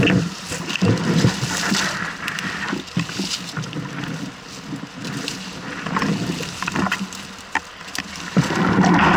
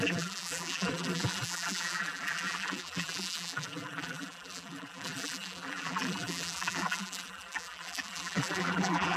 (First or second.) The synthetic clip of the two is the second